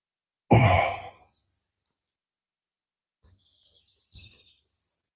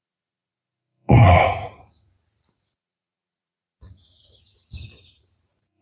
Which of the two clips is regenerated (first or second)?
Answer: second